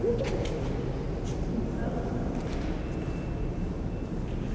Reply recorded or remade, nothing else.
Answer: recorded